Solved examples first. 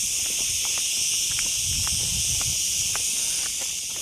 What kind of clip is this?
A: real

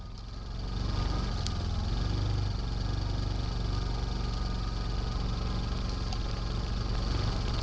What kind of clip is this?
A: real